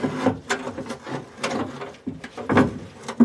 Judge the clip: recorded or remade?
recorded